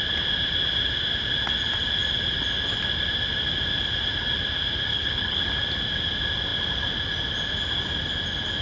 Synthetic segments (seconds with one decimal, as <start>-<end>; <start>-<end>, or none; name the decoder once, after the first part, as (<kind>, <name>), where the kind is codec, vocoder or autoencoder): 4.9-5.4 (codec, HILCodec)